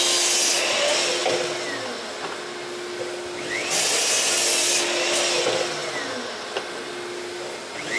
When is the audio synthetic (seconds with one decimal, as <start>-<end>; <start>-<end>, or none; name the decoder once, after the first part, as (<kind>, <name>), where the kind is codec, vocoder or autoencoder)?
none

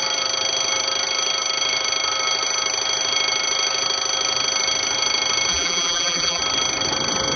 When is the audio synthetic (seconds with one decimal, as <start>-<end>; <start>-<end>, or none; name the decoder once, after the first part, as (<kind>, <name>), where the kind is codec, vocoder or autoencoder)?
5.5-6.4 (vocoder, BigVGAN v2)

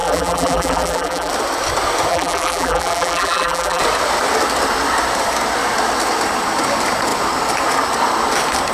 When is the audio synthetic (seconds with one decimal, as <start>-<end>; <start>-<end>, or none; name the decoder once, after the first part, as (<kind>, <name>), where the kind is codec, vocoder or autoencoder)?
0.0-1.3 (vocoder, BigVGAN v2); 2.1-3.8